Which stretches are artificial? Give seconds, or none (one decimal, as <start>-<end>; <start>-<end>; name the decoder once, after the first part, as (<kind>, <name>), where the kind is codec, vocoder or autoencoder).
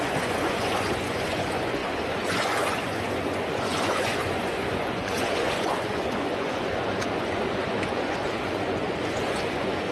0.0-9.9 (vocoder, Vocos)